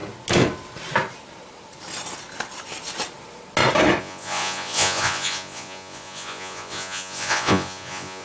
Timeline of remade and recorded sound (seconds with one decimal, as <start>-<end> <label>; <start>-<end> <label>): 0.0-4.0 recorded; 4.0-8.2 remade